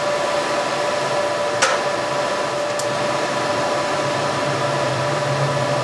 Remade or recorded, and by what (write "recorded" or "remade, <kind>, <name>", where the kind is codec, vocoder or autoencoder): recorded